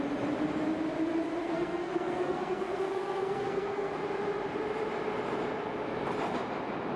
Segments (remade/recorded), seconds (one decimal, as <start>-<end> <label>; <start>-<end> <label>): 0.0-1.4 recorded; 1.4-3.9 remade; 3.9-7.0 recorded